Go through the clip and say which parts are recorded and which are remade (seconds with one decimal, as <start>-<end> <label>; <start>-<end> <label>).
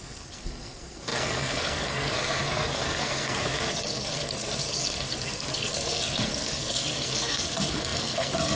0.0-8.6 remade